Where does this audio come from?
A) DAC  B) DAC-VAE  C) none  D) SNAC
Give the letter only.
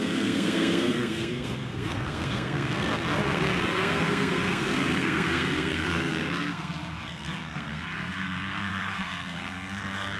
D